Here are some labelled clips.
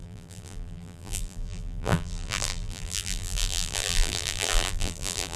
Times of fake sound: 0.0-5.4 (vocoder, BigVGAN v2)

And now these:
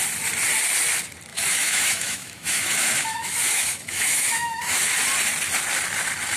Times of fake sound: 1.3-4.9 (autoencoder, DAC-VAE)

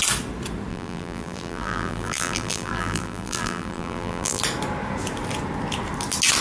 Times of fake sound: 0.7-4.4 (vocoder, BigVGAN v2)

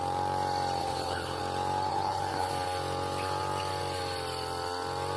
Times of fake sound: 0.8-1.4 (codec, HILCodec); 1.9-2.5

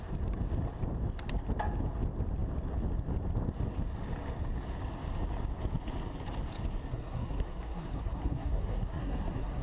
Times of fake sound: 6.9-9.6 (codec, SNAC)

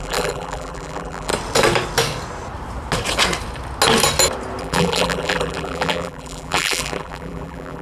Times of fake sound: 0.0-1.3 (vocoder, BigVGAN v2); 4.6-7.8

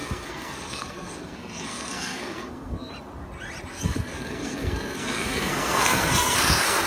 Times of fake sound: 0.0-2.9 (codec, SNAC); 3.7-6.9

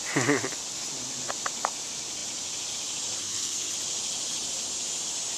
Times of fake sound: 3.2-3.7 (codec, SNAC)